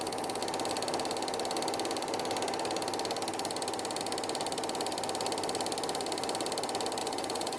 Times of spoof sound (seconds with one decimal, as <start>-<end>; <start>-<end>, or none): 7.0-7.6